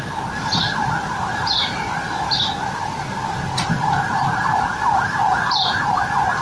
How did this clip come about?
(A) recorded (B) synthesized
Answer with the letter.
A